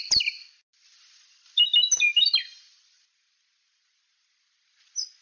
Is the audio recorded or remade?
recorded